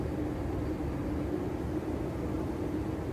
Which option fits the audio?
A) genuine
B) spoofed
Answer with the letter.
A